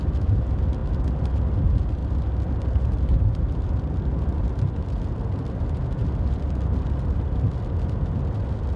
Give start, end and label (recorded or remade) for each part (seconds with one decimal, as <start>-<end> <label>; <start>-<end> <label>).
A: 0.0-2.0 recorded; 2.0-5.6 remade; 5.6-8.8 recorded